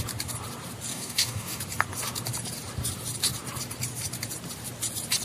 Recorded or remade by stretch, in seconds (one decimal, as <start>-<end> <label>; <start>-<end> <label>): 0.0-0.9 recorded; 0.9-1.6 remade; 1.6-5.2 recorded